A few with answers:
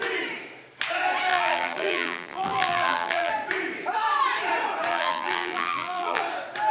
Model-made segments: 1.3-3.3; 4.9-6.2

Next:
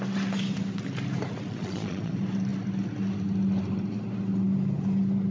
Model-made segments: 1.5-2.1

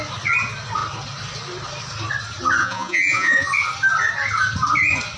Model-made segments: 2.6-3.5

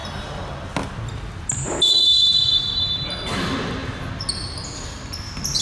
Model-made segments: none

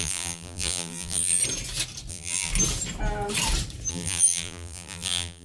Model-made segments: 0.0-1.4; 2.1-2.5; 3.9-5.4